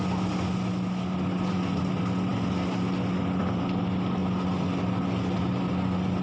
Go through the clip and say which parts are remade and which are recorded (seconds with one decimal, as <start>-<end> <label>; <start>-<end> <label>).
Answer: 0.0-6.2 recorded